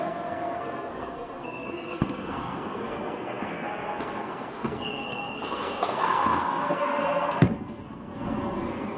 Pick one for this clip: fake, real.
fake